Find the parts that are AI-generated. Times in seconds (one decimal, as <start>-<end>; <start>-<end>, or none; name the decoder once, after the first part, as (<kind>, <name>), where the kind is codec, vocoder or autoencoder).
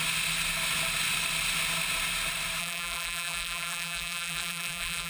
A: 2.6-5.1 (vocoder, BigVGAN v2)